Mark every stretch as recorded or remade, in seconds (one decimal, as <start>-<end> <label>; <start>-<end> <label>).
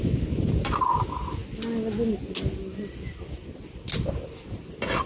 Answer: 0.0-5.1 recorded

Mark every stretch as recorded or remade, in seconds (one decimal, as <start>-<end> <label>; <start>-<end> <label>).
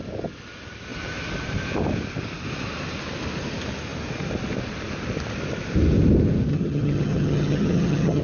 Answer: 0.0-6.5 recorded; 6.5-8.2 remade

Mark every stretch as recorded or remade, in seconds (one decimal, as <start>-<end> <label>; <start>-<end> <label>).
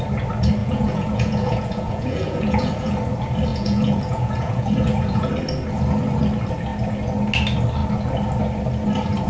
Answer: 0.0-0.6 recorded; 0.6-2.9 remade; 2.9-3.5 recorded; 3.5-5.3 remade; 5.3-9.3 recorded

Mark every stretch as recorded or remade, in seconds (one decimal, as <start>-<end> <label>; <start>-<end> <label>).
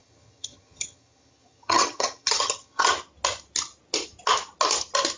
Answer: 0.0-2.9 remade; 2.9-5.2 recorded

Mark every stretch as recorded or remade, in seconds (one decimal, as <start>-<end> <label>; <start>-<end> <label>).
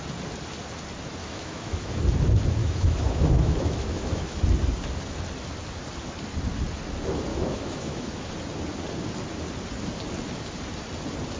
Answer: 0.0-1.2 recorded; 1.2-2.0 remade; 2.0-2.6 recorded; 2.6-4.4 remade; 4.4-7.3 recorded; 7.3-8.3 remade; 8.3-11.4 recorded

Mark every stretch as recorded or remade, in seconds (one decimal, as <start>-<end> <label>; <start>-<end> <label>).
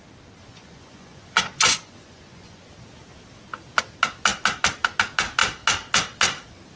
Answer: 0.0-0.5 recorded; 0.5-2.6 remade; 2.6-6.8 recorded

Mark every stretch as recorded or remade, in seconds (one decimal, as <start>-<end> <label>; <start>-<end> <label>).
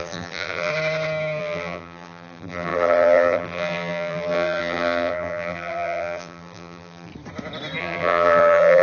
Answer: 0.0-0.7 remade; 0.7-1.4 recorded; 1.4-7.1 remade; 7.1-7.8 recorded; 7.8-8.8 remade